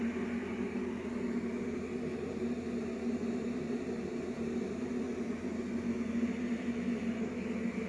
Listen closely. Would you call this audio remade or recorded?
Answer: recorded